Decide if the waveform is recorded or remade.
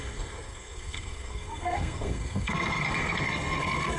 remade